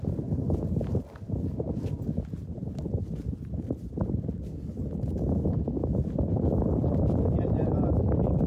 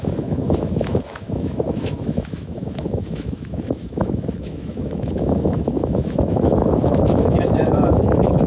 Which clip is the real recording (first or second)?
first